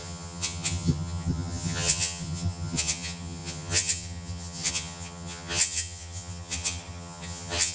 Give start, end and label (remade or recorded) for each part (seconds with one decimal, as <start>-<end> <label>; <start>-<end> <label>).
0.0-7.7 remade